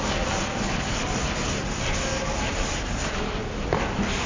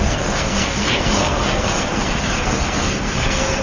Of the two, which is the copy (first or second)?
second